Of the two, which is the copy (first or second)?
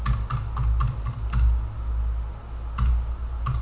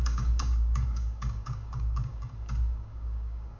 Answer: second